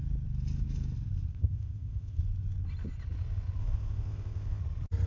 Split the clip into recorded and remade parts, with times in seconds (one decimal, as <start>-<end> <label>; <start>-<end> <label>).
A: 0.0-1.3 recorded; 1.3-2.2 remade; 2.2-3.6 recorded; 3.6-4.6 remade; 4.6-5.1 recorded